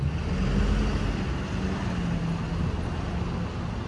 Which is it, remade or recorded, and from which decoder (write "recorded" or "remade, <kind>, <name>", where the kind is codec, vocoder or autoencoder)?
recorded